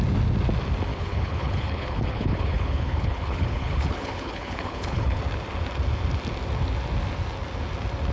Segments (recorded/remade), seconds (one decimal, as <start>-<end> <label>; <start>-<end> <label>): 0.0-0.9 recorded; 0.9-5.2 remade; 5.2-8.1 recorded